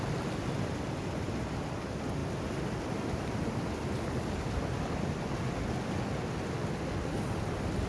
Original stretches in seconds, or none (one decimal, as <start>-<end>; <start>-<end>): 0.0-7.9